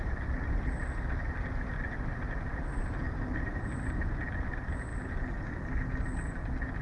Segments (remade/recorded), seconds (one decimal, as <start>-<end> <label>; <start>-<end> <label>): 0.0-6.8 recorded